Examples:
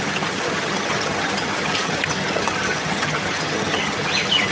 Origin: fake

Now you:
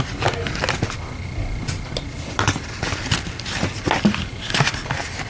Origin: real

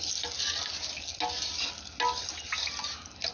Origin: real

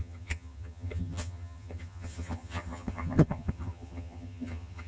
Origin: fake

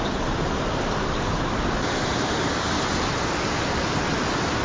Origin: real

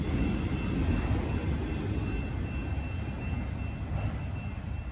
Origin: real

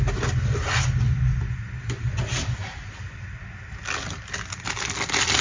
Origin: real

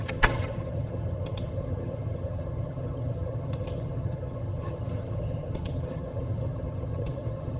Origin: fake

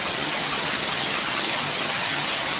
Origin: fake